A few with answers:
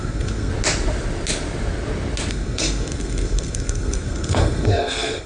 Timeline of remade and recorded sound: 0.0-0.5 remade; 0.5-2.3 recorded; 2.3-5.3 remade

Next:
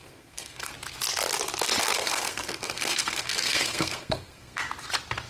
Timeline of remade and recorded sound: 0.0-0.7 remade; 0.7-1.8 recorded; 1.8-4.6 remade; 4.6-5.3 recorded

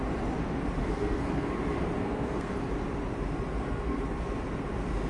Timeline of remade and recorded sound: 0.0-0.8 recorded; 0.8-1.5 remade; 1.5-2.0 recorded; 2.0-2.5 remade; 2.5-3.5 recorded; 3.5-4.0 remade; 4.0-5.1 recorded

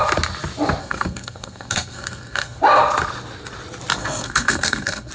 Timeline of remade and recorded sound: 0.0-0.8 recorded; 0.8-2.6 remade; 2.6-4.0 recorded; 4.0-5.1 remade

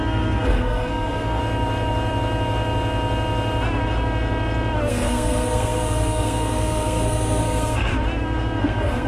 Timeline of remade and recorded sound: 0.0-1.4 remade; 1.4-4.9 recorded; 4.9-7.9 remade; 7.9-8.6 recorded; 8.6-9.1 remade

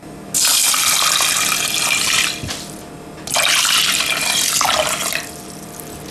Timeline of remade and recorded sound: 0.0-6.1 recorded

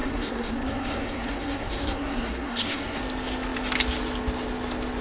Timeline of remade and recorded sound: 0.0-3.0 remade; 3.0-5.0 recorded

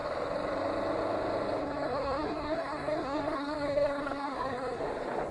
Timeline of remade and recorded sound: 0.0-1.6 recorded; 1.6-4.8 remade; 4.8-5.3 recorded